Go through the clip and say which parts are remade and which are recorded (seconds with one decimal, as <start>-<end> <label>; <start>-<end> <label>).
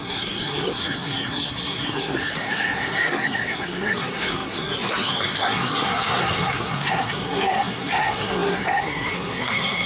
0.0-9.9 remade